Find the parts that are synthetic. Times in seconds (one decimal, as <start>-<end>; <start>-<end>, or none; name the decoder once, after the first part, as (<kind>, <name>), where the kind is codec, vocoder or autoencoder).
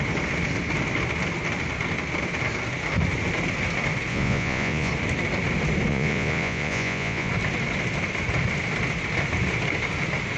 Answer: 4.1-4.9 (vocoder, Vocos); 5.9-7.3